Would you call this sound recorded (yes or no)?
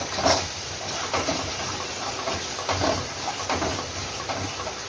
yes